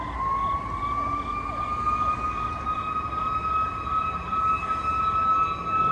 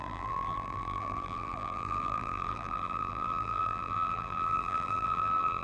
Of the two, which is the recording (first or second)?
first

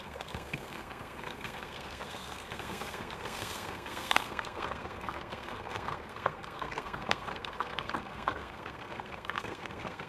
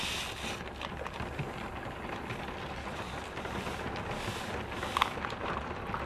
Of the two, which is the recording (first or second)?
second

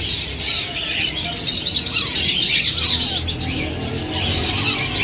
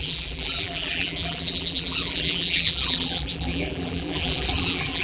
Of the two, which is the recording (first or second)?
first